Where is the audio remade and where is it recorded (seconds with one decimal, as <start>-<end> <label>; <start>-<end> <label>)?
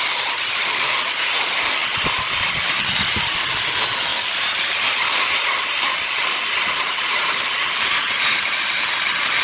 0.0-4.1 recorded; 4.1-5.9 remade; 5.9-7.2 recorded; 7.2-8.6 remade; 8.6-9.4 recorded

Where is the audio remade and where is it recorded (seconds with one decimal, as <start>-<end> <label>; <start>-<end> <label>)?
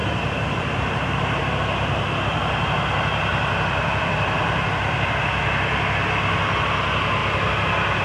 0.0-1.4 remade; 1.4-3.3 recorded; 3.3-5.1 remade; 5.1-8.0 recorded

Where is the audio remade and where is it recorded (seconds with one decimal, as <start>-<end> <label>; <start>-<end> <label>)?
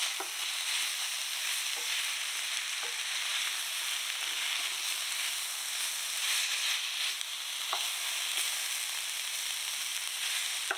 0.0-1.2 recorded; 1.2-2.9 remade; 2.9-3.3 recorded; 3.3-4.5 remade; 4.5-9.9 recorded; 9.9-10.8 remade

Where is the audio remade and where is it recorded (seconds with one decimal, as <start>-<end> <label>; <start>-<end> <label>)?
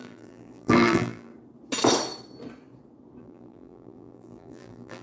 0.0-1.3 remade; 1.3-3.2 recorded; 3.2-5.0 remade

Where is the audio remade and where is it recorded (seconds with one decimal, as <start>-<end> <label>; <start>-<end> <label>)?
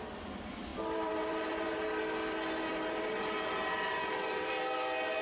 0.0-0.7 recorded; 0.7-2.0 remade; 2.0-2.7 recorded; 2.7-4.5 remade; 4.5-5.2 recorded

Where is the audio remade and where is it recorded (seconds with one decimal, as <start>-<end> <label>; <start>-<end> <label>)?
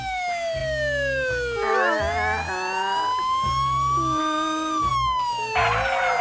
0.0-6.2 recorded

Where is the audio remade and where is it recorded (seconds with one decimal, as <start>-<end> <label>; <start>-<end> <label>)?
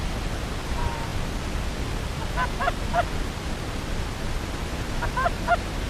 0.0-1.1 remade; 1.1-4.6 recorded; 4.6-5.9 remade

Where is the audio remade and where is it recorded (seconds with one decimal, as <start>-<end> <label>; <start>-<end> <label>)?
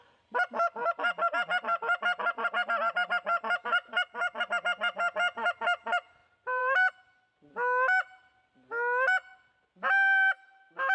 0.0-6.2 recorded; 6.2-6.9 remade; 6.9-10.9 recorded